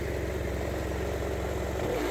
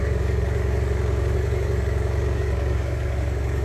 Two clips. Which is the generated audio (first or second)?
second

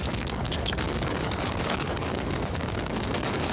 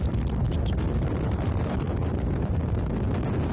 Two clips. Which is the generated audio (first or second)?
first